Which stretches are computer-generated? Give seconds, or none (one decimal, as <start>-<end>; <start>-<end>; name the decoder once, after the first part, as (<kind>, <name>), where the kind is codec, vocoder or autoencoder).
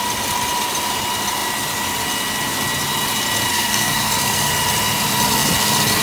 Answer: 3.5-4.5 (codec, SNAC)